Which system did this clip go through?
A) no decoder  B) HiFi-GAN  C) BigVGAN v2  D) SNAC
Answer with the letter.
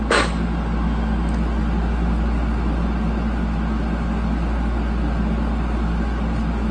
A